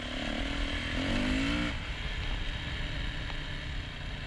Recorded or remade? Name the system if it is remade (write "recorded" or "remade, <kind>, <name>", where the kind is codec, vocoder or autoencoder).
recorded